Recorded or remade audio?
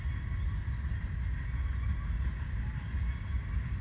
recorded